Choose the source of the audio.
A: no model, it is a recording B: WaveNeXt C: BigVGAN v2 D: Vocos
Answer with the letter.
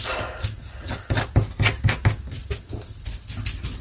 A